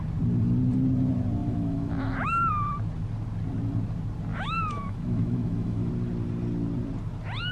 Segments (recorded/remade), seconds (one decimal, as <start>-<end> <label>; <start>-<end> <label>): 0.0-1.4 recorded; 1.4-2.5 remade; 2.5-4.3 recorded; 4.3-5.9 remade; 5.9-7.5 recorded